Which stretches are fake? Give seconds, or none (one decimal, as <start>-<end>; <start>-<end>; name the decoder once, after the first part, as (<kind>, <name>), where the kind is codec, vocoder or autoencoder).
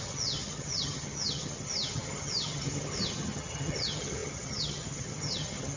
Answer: 0.0-5.8 (vocoder, HiFi-GAN)